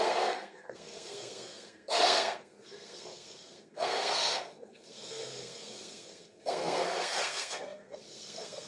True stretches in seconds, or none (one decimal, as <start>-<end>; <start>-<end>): none